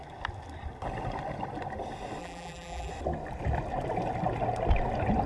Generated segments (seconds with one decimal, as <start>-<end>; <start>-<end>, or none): 2.2-2.9